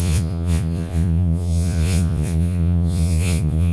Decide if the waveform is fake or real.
fake